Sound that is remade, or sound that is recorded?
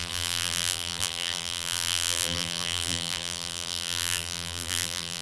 remade